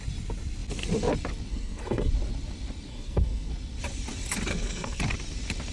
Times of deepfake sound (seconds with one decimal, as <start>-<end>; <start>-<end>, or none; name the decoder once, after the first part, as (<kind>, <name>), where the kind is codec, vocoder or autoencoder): 1.5-2.1 (codec, SNAC); 2.9-3.5; 4.5-5.0